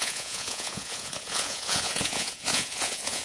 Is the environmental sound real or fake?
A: fake